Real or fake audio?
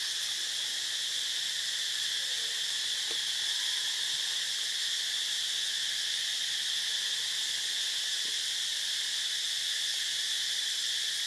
real